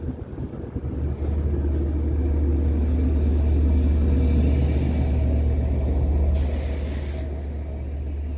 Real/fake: real